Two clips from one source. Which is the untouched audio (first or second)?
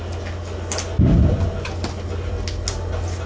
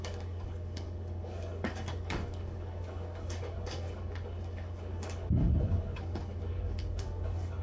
first